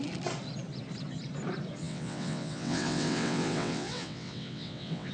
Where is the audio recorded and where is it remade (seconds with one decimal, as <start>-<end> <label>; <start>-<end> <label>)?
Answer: 0.0-1.8 recorded; 1.8-5.1 remade